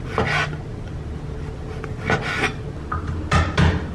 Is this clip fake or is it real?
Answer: real